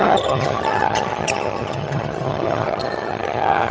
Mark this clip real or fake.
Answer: fake